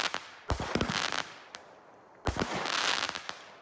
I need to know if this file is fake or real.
real